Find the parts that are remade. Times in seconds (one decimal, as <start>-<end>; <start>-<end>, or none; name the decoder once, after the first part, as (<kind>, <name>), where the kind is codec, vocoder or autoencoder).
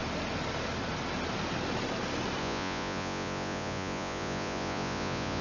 2.4-5.4 (vocoder, Vocos)